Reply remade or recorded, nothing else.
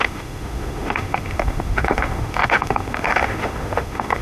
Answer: remade